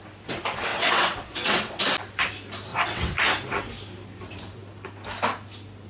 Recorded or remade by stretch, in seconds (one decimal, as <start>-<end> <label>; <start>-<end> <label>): 0.0-0.7 recorded; 0.7-1.8 remade; 1.8-2.7 recorded; 2.7-3.2 remade; 3.2-5.9 recorded